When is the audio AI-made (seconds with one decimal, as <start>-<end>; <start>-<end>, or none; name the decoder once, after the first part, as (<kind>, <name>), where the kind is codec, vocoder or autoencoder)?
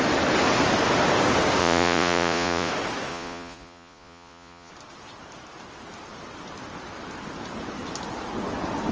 1.6-2.7 (vocoder, Vocos); 3.1-4.7